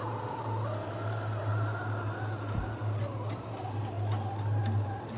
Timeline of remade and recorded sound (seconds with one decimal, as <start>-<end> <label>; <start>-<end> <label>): 0.0-5.2 recorded

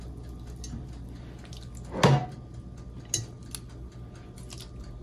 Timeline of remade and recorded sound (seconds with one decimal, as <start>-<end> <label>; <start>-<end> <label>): 0.0-5.0 recorded

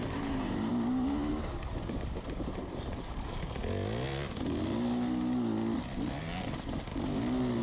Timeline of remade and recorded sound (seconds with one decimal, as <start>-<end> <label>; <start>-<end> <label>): 0.0-0.7 remade; 0.7-1.3 recorded; 1.3-3.6 remade; 3.6-7.6 recorded

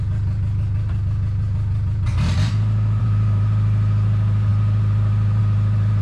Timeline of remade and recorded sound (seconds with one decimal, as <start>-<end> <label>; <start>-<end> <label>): 0.0-2.1 remade; 2.1-3.0 recorded; 3.0-6.0 remade

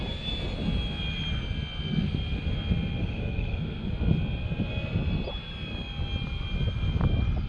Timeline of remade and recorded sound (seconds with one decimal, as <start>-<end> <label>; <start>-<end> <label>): 0.0-3.0 recorded; 3.0-3.9 remade; 3.9-7.5 recorded

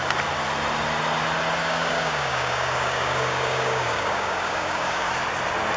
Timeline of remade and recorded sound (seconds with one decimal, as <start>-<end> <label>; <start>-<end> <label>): 0.0-1.6 recorded; 1.6-5.1 remade; 5.1-5.8 recorded